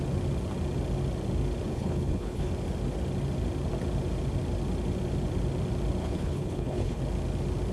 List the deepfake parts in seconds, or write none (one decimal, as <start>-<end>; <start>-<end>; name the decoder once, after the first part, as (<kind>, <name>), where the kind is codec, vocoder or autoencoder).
1.7-2.5 (codec, HILCodec); 6.0-7.0